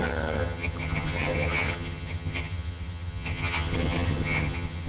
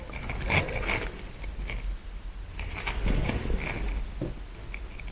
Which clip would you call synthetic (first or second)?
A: first